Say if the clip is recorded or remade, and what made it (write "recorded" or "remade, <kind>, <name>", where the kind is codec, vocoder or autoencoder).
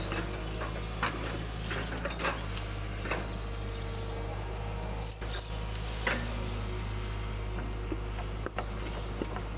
recorded